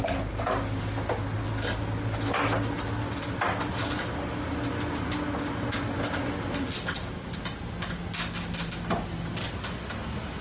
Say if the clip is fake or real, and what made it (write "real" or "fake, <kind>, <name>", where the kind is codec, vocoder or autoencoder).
real